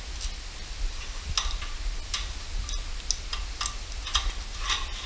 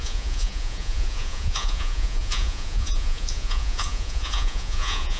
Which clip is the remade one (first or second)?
second